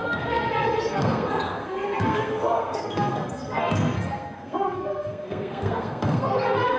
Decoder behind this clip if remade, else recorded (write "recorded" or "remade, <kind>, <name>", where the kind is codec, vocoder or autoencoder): remade, codec, SNAC